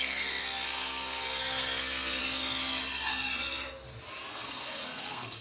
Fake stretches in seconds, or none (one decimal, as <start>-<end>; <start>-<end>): 0.0-2.2; 4.3-5.4